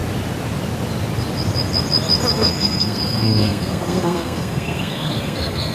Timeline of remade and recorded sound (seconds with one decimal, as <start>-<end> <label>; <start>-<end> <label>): 0.0-2.3 recorded; 2.3-5.7 remade